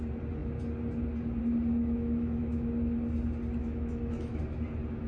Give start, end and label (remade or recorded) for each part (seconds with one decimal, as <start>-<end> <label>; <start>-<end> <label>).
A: 0.0-1.8 recorded; 1.8-2.7 remade; 2.7-3.6 recorded; 3.6-4.4 remade; 4.4-5.1 recorded